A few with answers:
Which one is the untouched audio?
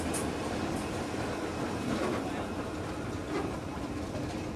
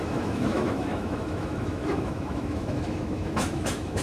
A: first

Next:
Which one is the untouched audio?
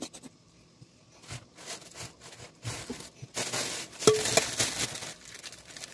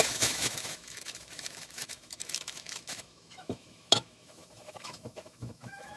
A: first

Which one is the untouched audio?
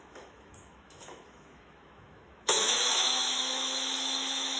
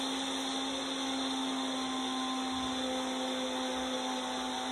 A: second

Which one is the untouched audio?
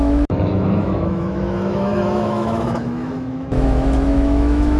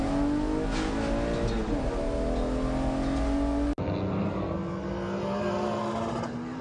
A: second